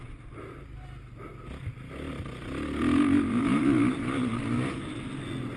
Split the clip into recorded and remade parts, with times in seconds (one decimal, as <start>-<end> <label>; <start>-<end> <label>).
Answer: 0.0-5.6 recorded